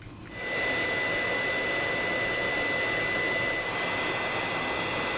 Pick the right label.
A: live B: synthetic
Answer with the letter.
A